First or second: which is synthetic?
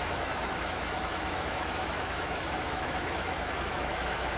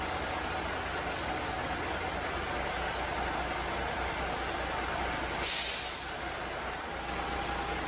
first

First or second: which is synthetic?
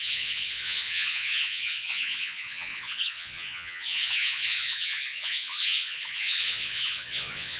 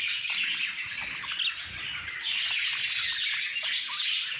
first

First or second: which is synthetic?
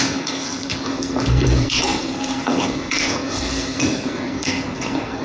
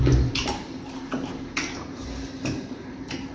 first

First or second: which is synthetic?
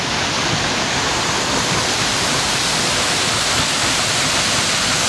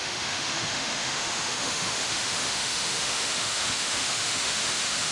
second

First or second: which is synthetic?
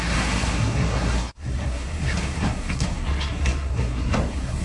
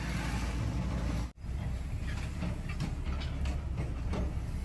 first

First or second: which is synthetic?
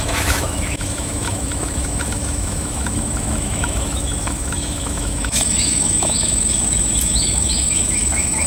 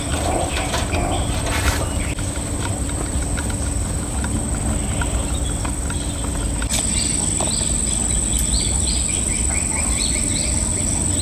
first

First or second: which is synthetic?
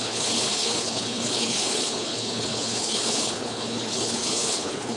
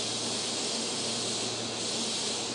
first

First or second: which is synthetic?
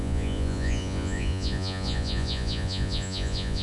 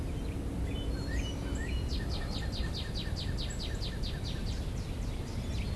first